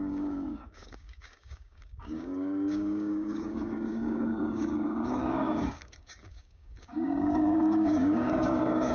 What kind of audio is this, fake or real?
fake